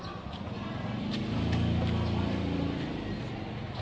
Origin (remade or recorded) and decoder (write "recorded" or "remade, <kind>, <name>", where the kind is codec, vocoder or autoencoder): recorded